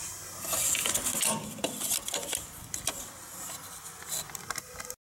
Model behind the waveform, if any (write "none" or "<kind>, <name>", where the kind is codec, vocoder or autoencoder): none